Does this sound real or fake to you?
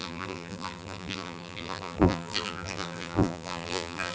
fake